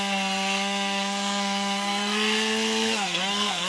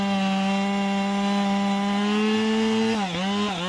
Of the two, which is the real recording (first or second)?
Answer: second